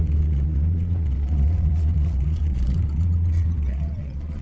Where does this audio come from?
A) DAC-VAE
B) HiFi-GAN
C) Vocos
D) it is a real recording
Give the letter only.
C